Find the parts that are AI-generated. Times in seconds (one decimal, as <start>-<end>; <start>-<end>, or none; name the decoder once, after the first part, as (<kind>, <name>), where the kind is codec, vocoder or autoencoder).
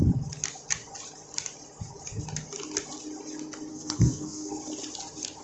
3.7-4.5 (codec, SNAC)